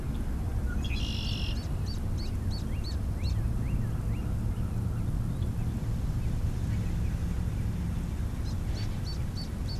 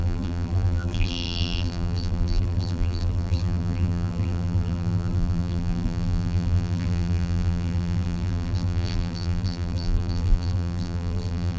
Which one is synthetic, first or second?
second